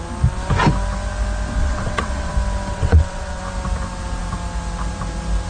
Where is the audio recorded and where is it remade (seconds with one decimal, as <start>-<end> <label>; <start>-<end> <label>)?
0.0-1.6 recorded; 1.6-2.3 remade; 2.3-2.7 recorded; 2.7-3.4 remade; 3.4-5.5 recorded